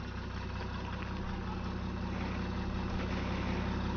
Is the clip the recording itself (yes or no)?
yes